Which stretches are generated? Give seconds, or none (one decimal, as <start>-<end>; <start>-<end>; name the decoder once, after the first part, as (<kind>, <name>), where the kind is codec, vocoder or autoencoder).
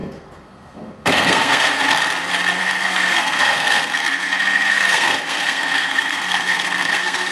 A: 0.0-1.8 (codec, SNAC); 2.6-7.3